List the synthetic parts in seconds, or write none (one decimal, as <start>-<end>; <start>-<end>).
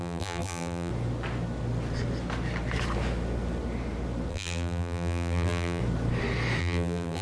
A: 0.0-0.9; 4.3-5.8; 6.6-7.2